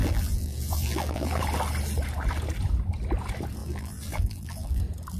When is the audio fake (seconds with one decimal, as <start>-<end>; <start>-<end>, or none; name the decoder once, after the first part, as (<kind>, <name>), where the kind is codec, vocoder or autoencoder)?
0.0-1.4 (vocoder, BigVGAN v2); 3.6-4.8